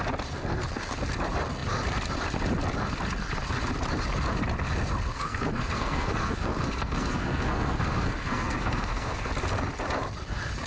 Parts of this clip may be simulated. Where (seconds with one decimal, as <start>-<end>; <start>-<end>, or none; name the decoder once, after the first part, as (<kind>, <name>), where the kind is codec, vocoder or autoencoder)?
5.1-9.3 (codec, SNAC)